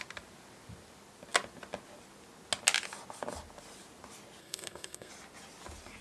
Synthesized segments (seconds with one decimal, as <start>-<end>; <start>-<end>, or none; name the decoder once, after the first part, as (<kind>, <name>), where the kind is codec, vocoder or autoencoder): 4.4-5.1 (codec, SNAC)